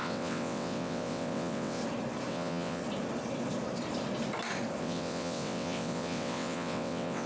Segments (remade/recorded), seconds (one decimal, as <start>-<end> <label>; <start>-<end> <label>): 0.0-1.8 remade; 1.8-2.3 recorded; 2.3-2.8 remade; 2.8-4.8 recorded; 4.8-7.3 remade

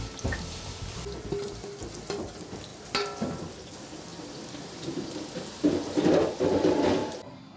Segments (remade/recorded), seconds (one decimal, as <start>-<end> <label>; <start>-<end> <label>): 0.0-4.1 recorded; 4.1-5.6 remade; 5.6-7.0 recorded; 7.0-7.6 remade

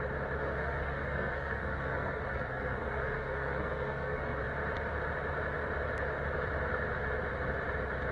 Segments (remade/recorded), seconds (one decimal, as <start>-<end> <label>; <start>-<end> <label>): 0.0-0.4 recorded; 0.4-4.4 remade; 4.4-8.1 recorded

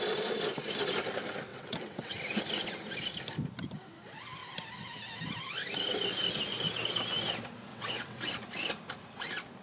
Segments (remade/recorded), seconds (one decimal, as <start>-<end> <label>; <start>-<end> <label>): 0.0-1.5 recorded; 1.5-2.1 remade; 2.1-7.7 recorded; 7.7-8.3 remade; 8.3-9.6 recorded

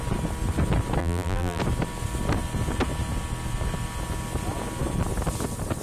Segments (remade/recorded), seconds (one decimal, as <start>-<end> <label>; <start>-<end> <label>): 0.0-1.0 recorded; 1.0-1.6 remade; 1.6-5.8 recorded

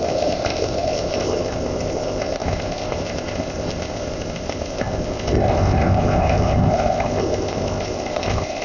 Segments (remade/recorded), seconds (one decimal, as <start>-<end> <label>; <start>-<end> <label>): 0.0-8.6 remade

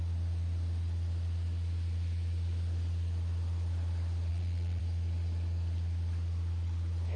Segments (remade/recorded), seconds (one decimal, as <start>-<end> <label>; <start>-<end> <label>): 0.0-4.3 recorded; 4.3-4.8 remade; 4.8-7.2 recorded